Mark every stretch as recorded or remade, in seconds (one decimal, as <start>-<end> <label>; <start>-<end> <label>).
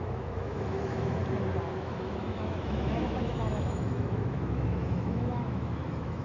0.0-1.2 remade; 1.2-1.7 recorded; 1.7-6.2 remade